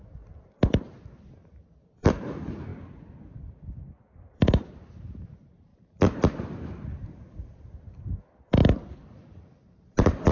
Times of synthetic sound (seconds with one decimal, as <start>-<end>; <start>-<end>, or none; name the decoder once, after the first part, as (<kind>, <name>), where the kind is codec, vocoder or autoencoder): 2.7-4.9 (vocoder, BigVGAN v2); 5.7-6.4; 8.6-10.3